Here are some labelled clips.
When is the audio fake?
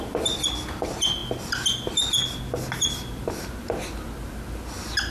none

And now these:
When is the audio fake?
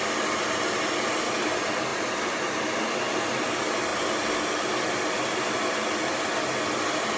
1.9-3.2 (vocoder, BigVGAN v2)